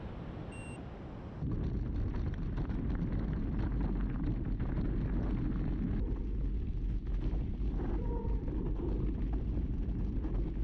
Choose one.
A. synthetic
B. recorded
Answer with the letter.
B